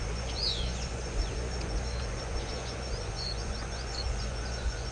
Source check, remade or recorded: remade